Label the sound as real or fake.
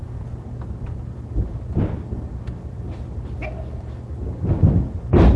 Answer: real